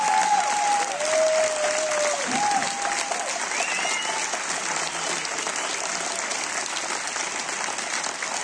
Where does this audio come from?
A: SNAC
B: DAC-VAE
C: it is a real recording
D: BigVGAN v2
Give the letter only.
C